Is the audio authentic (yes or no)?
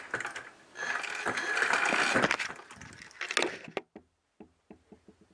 yes